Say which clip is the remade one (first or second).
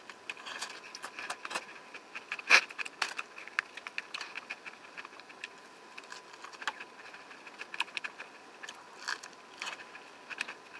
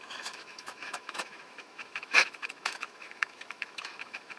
second